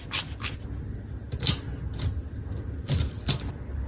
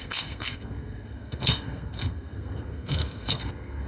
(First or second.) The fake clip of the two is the second